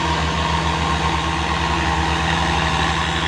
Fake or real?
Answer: real